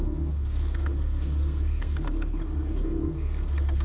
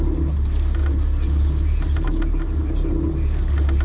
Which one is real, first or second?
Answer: second